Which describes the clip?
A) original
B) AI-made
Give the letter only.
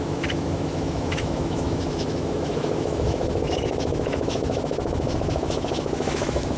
B